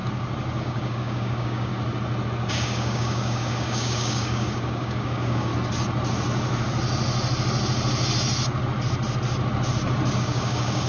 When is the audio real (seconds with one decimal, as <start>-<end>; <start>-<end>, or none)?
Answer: 0.0-0.6; 1.7-2.5; 5.5-10.2

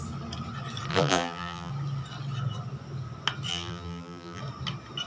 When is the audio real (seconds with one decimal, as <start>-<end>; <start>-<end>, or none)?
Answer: 0.0-0.9; 1.7-3.5; 4.4-5.1

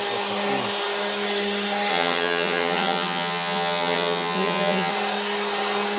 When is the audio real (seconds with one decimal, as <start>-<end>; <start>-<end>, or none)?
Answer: 0.0-1.9; 4.9-6.0

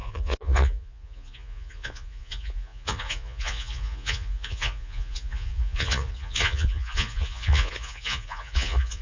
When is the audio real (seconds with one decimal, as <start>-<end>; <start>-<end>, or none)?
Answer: none